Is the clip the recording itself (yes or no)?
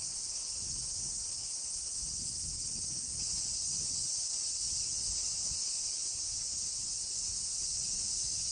no